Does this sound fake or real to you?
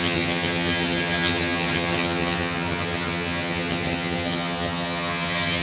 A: fake